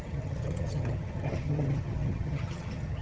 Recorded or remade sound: remade